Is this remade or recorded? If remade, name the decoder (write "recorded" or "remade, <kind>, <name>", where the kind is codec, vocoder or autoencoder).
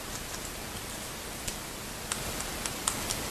recorded